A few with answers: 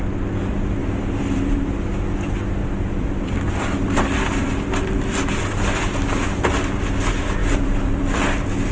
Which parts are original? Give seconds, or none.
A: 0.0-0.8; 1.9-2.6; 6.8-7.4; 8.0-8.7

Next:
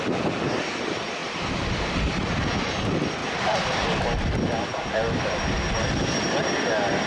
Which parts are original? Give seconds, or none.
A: 0.0-1.2; 2.3-3.2; 4.0-7.1

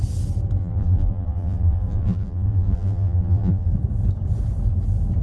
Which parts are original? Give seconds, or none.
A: 0.0-0.6; 3.7-5.2

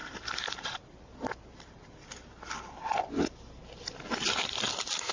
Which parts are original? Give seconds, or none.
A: 3.1-5.1

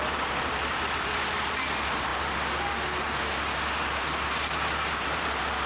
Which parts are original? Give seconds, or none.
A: 2.1-3.8